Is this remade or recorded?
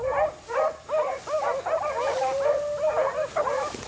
remade